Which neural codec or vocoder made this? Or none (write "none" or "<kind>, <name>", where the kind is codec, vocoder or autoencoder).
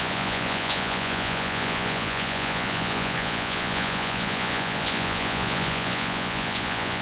vocoder, Vocos